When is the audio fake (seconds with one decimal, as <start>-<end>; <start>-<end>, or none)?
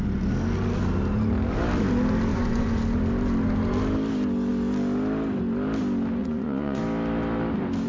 2.3-2.8; 6.2-6.8